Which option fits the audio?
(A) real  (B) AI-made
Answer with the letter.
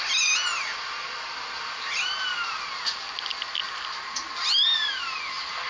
A